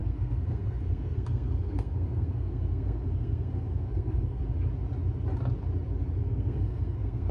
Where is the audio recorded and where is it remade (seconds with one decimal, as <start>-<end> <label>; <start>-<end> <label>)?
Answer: 0.0-4.4 remade; 4.4-6.2 recorded; 6.2-7.3 remade